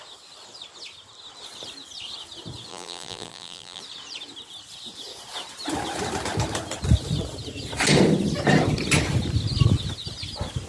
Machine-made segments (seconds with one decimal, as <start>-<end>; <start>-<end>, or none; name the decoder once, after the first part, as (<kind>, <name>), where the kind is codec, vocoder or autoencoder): 2.7-3.8 (vocoder, BigVGAN v2)